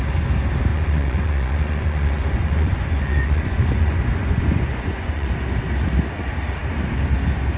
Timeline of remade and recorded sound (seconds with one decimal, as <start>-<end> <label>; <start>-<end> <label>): 0.0-0.7 recorded; 0.7-5.3 remade; 5.3-7.6 recorded